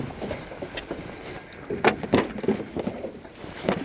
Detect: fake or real real